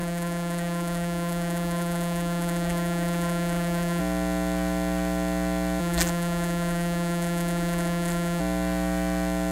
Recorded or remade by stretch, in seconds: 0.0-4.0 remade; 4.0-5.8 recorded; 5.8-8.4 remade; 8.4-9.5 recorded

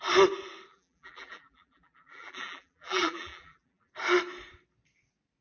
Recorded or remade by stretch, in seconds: 0.0-0.7 recorded; 0.7-3.9 remade; 3.9-5.4 recorded

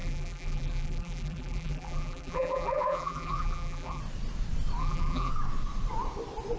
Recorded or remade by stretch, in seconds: 0.0-4.0 remade; 4.0-4.8 recorded; 4.8-5.3 remade; 5.3-6.6 recorded

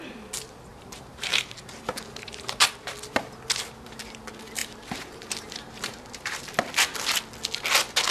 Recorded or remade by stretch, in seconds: 0.0-0.7 recorded; 0.7-2.6 remade; 2.6-4.6 recorded; 4.6-6.4 remade; 6.4-8.1 recorded

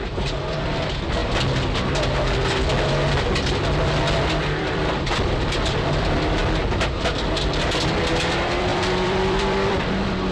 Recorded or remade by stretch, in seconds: 0.0-1.2 remade; 1.2-4.4 recorded; 4.4-6.4 remade; 6.4-7.4 recorded; 7.4-10.3 remade

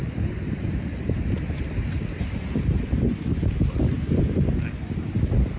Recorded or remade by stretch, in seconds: 0.0-5.6 recorded